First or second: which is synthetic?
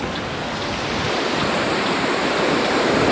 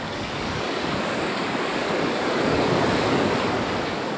second